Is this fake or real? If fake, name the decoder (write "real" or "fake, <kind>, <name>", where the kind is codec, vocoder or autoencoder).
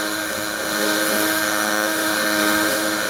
fake, autoencoder, DAC-VAE